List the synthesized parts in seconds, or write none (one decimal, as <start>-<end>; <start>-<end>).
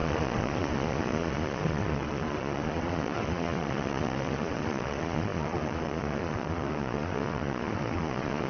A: 0.0-8.5